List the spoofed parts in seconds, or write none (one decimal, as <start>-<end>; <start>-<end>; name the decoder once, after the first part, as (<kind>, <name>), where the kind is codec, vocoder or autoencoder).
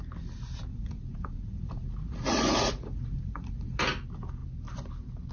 0.7-3.8 (vocoder, Vocos)